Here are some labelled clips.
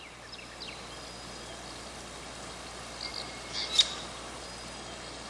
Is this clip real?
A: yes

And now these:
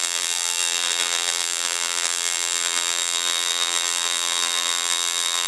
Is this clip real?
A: no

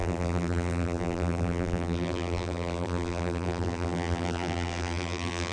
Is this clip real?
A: no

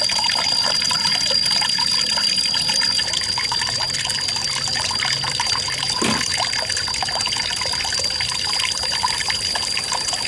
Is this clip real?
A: no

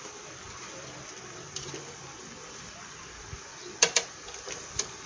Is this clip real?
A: no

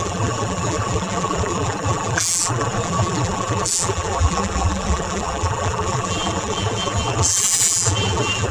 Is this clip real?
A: no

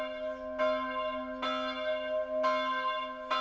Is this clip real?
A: yes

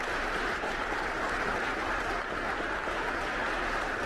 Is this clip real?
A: no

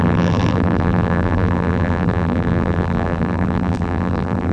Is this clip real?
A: no